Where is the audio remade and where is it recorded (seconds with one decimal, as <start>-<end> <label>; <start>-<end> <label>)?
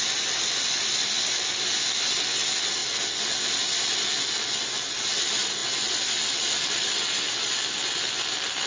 0.0-8.7 recorded